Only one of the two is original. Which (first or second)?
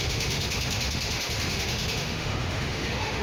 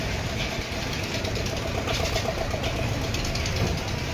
second